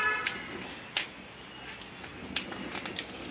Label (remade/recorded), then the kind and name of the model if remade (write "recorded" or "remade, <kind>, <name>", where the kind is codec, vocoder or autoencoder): recorded